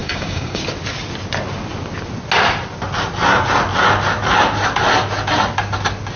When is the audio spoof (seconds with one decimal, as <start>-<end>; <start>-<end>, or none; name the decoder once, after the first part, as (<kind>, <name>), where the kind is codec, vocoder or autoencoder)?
0.0-0.6 (codec, DAC)